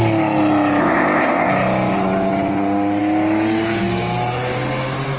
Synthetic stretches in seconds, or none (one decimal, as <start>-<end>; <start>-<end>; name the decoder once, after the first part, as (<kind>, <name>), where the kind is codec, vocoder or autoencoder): 0.8-1.5 (codec, ZipCodec)